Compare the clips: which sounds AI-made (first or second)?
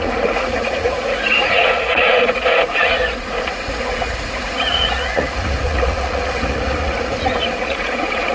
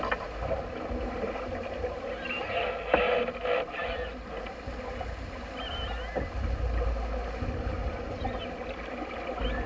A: first